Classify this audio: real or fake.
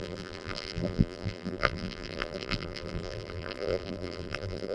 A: fake